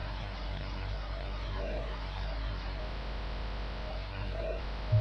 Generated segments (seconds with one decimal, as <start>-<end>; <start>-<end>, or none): 0.0-2.8; 3.9-4.6